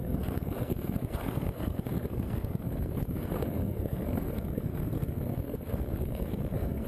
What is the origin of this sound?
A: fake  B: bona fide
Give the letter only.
A